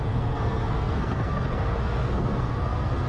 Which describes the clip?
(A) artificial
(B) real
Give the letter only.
A